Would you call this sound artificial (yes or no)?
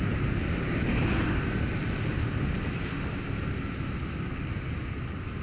no